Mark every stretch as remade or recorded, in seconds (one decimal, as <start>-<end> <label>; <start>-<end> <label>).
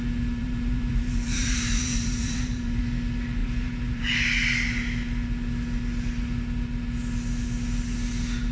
0.0-0.4 recorded; 0.4-2.8 remade; 2.8-3.4 recorded; 3.4-4.0 remade; 4.0-8.5 recorded